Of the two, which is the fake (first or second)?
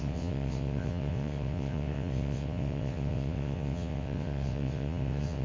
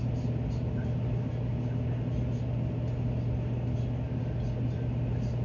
first